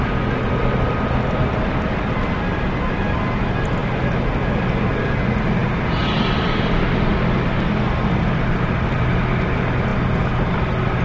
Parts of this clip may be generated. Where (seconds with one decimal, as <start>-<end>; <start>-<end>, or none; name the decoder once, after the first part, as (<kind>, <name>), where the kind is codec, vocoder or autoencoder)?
none